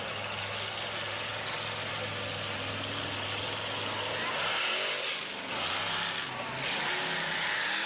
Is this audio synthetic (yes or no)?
no